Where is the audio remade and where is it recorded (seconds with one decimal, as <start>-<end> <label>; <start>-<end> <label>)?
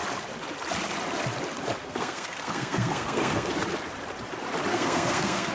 0.0-1.8 recorded; 1.8-3.5 remade; 3.5-4.7 recorded; 4.7-5.5 remade